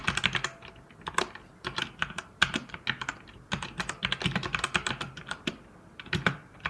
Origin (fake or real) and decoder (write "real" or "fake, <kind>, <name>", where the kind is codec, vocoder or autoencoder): real